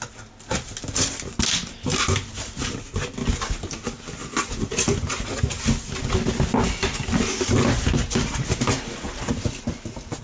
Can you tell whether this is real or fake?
real